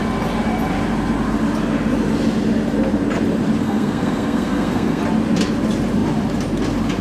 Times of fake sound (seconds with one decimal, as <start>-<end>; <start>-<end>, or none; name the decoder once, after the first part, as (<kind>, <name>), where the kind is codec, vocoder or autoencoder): 3.6-5.0 (codec, SNAC)